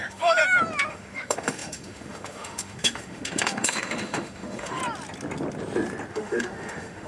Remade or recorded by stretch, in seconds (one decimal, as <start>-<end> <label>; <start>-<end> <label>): 0.0-0.4 remade; 0.4-0.9 recorded; 0.9-4.8 remade; 4.8-6.1 recorded; 6.1-7.1 remade